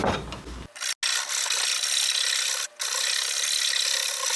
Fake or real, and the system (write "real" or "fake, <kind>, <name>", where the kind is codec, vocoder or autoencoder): real